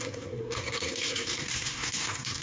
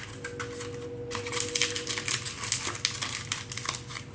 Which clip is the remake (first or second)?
first